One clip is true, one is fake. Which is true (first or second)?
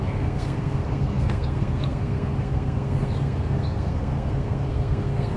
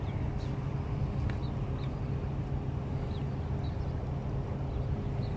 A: second